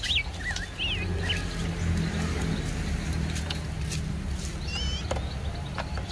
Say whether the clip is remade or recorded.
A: recorded